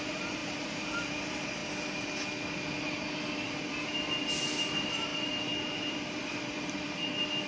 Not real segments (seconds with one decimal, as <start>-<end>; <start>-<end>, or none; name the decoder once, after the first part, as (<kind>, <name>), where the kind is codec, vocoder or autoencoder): 0.0-1.6 (vocoder, BigVGAN v2); 4.4-7.5